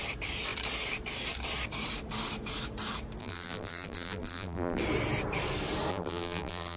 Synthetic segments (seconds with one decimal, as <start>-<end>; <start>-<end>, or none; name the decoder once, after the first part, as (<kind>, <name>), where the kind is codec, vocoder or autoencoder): 3.2-4.8 (vocoder, BigVGAN v2); 5.9-6.8